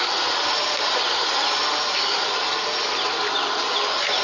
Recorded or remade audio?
recorded